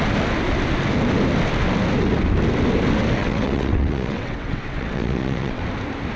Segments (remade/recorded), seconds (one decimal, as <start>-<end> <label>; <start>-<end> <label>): 0.0-3.2 recorded; 3.2-5.6 remade; 5.6-6.2 recorded